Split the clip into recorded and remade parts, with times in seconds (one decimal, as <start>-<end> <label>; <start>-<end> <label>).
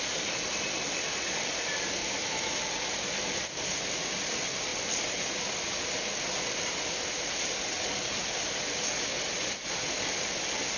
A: 0.0-2.0 recorded; 2.0-2.6 remade; 2.6-10.8 recorded